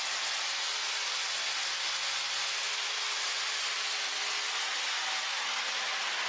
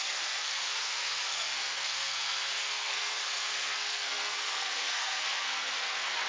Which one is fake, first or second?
second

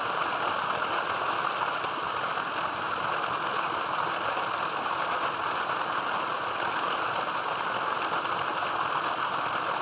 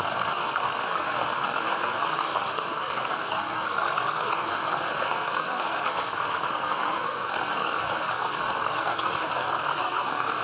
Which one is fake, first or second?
second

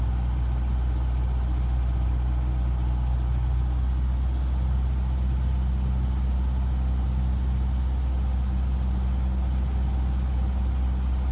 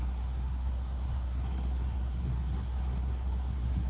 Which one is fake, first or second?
second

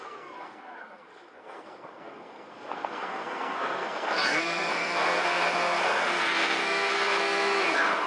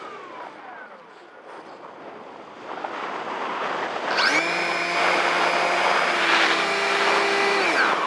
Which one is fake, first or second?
first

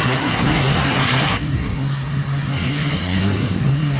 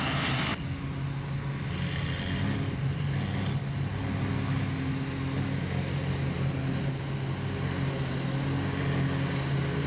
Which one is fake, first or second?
first